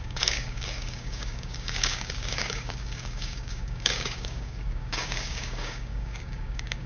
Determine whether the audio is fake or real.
fake